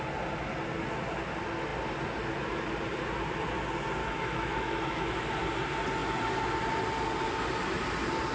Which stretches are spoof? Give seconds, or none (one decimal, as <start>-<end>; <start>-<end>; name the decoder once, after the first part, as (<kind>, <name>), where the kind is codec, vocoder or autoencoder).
4.0-5.3 (autoencoder, DAC-VAE)